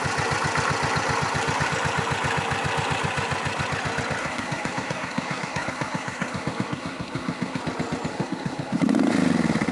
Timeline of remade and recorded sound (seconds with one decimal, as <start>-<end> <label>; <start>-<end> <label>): 0.0-4.2 recorded; 4.2-7.6 remade; 7.6-8.1 recorded; 8.1-8.8 remade; 8.8-9.7 recorded